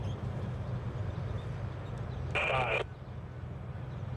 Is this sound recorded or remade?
recorded